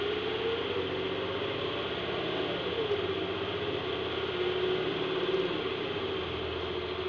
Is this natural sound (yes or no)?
yes